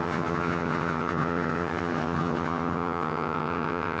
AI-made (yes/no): yes